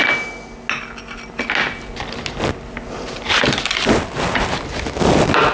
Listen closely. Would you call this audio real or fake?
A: real